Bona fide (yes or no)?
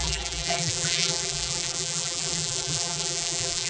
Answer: no